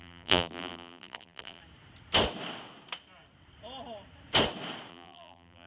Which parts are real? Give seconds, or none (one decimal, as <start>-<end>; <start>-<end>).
1.6-4.9